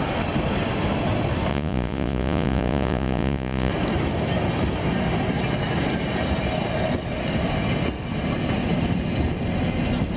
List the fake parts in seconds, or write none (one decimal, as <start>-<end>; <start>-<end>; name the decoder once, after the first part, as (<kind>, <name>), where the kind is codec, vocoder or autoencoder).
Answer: 1.5-3.7 (vocoder, Vocos)